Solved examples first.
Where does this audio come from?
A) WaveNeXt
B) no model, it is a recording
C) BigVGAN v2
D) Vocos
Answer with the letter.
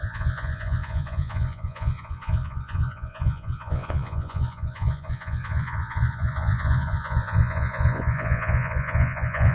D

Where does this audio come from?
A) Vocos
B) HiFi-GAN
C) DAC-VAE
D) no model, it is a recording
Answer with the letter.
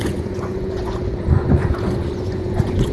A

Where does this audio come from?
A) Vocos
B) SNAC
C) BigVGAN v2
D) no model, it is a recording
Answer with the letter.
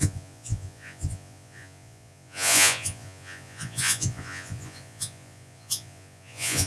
A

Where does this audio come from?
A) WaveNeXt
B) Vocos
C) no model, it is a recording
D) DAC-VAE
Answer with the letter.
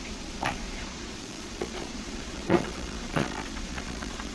B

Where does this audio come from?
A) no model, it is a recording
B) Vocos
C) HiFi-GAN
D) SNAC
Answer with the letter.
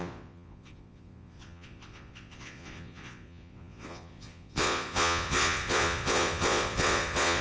B